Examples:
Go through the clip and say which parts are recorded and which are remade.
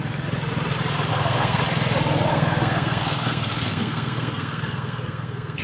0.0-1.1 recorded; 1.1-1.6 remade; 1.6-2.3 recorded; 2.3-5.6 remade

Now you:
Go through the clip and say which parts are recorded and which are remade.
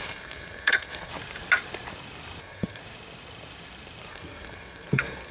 0.0-1.1 remade; 1.1-2.4 recorded; 2.4-2.8 remade; 2.8-4.1 recorded; 4.1-5.3 remade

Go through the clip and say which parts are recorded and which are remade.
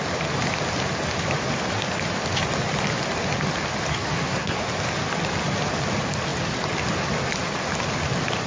0.0-3.9 recorded; 3.9-4.6 remade; 4.6-8.5 recorded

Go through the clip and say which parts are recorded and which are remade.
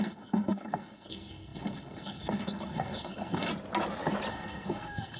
0.0-3.5 remade; 3.5-4.3 recorded; 4.3-5.2 remade